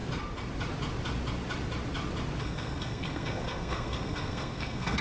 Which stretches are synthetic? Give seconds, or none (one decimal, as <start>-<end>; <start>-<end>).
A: 2.4-5.0